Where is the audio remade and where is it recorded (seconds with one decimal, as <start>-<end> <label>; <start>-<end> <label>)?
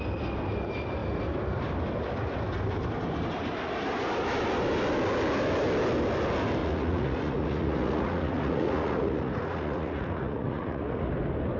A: 0.0-6.6 recorded; 6.6-11.1 remade; 11.1-11.6 recorded